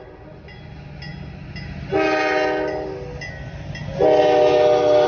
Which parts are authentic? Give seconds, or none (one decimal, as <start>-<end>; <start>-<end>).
0.0-5.1